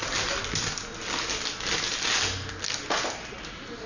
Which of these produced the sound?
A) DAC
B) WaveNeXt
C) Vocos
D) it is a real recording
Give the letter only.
D